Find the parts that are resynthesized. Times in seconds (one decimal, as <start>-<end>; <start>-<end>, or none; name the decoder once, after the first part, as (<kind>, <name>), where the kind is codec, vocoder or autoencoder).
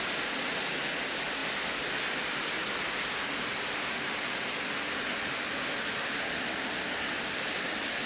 none